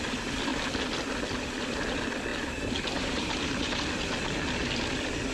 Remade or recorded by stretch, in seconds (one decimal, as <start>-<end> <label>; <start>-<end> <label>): 0.0-2.3 recorded; 2.3-3.6 remade; 3.6-5.3 recorded